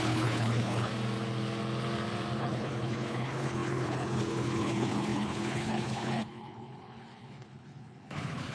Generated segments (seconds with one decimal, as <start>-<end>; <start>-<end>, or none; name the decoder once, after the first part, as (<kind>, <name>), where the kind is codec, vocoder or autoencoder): 0.0-0.9 (codec, HILCodec); 2.4-8.5